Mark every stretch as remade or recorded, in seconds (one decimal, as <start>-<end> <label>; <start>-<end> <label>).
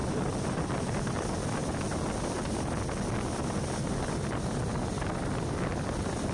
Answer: 0.0-6.3 recorded